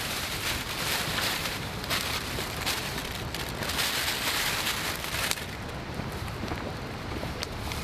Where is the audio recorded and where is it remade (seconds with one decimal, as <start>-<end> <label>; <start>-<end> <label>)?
0.0-3.0 remade; 3.0-5.9 recorded; 5.9-7.8 remade